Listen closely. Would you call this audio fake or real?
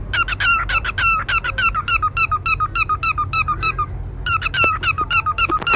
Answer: real